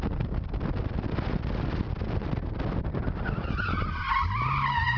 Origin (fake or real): real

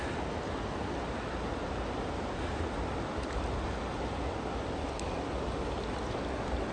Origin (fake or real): real